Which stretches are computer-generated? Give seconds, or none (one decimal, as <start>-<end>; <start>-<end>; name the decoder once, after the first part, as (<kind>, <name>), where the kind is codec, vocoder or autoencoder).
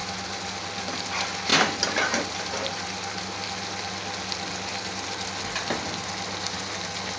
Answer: none